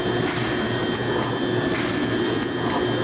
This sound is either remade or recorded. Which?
recorded